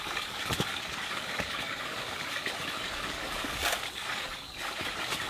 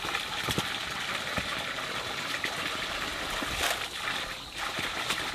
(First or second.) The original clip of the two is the second